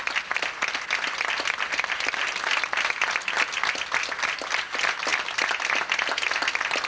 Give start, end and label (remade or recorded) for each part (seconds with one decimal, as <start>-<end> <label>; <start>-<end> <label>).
0.0-6.9 recorded